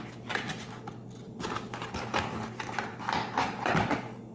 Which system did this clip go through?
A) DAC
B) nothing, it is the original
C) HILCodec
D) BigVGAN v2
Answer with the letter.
B